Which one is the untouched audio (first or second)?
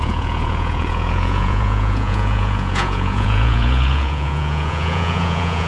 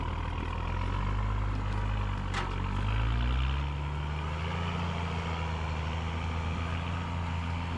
second